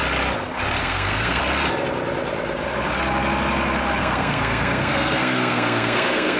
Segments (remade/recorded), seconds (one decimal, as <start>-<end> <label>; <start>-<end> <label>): 0.0-0.8 recorded; 0.8-1.4 remade; 1.4-4.0 recorded; 4.0-6.4 remade